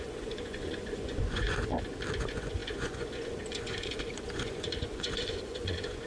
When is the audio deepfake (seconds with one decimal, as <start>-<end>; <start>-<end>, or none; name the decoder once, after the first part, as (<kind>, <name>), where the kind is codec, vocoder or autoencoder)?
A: 0.0-1.7 (vocoder, Vocos); 2.2-6.1